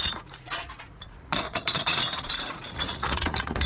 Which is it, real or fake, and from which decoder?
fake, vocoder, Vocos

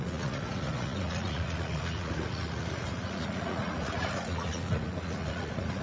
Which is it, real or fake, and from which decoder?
fake, vocoder, Vocos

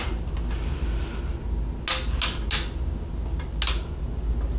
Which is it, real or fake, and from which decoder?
real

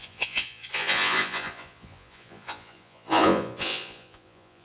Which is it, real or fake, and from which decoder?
fake, vocoder, Vocos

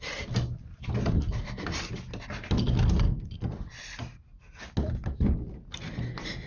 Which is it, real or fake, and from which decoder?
real